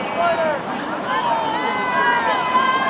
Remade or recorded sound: recorded